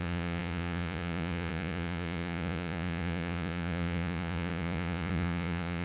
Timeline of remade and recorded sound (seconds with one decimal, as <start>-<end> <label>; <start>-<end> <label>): 0.0-5.8 remade